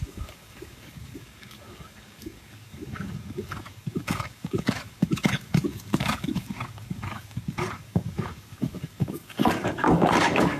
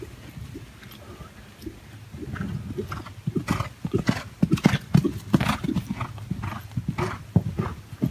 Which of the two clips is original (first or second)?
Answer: second